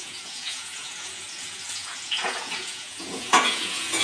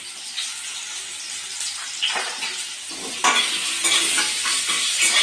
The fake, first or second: first